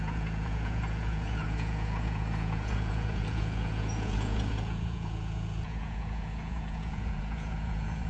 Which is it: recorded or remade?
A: remade